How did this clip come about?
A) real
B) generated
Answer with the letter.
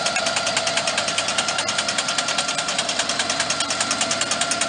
A